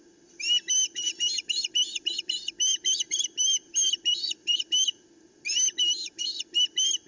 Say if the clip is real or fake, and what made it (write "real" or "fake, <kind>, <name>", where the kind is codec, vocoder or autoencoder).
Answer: real